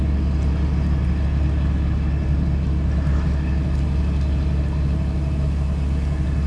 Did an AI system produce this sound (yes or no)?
no